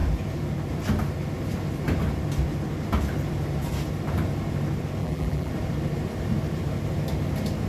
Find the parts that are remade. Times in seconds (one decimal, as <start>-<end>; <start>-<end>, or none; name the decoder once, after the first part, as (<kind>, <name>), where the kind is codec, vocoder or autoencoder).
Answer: 5.0-5.5 (vocoder, BigVGAN v2)